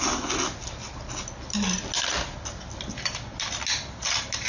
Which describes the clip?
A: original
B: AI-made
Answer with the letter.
A